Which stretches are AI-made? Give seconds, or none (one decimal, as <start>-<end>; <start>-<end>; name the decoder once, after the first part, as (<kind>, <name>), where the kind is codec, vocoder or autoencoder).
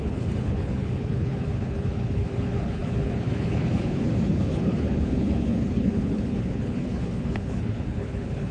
0.0-8.5 (codec, HILCodec)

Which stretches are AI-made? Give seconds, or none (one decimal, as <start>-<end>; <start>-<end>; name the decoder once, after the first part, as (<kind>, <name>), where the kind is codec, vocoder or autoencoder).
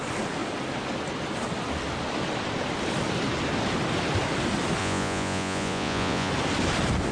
4.8-6.3 (vocoder, Vocos)